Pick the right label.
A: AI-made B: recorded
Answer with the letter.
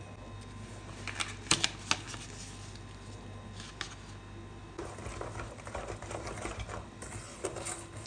B